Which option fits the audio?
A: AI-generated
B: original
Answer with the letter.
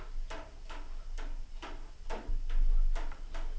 B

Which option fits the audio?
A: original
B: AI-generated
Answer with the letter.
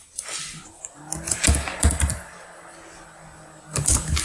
A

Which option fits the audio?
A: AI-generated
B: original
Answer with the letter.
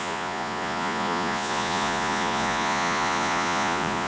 A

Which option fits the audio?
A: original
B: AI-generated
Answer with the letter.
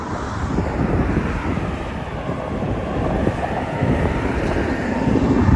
A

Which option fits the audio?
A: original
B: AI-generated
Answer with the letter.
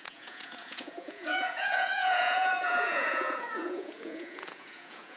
B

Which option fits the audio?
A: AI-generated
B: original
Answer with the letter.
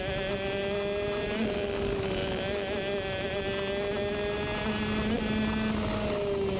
B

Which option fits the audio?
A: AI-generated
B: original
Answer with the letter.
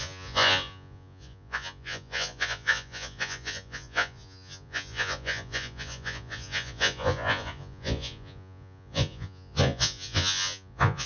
A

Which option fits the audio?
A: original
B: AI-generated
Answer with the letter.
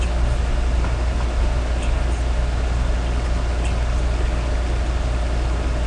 A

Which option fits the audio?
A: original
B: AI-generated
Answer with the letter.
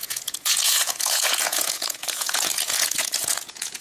B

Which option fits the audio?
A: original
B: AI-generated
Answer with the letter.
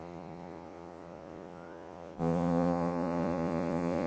B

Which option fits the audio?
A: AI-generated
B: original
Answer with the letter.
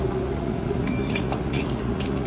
A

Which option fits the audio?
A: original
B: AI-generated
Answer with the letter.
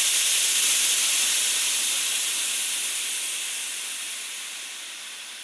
A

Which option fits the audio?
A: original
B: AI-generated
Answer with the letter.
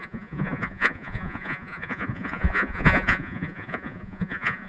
B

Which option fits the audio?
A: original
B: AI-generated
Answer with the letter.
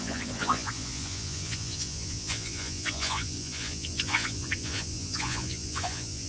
B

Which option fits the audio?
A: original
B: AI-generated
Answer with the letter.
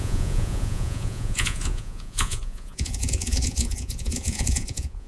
B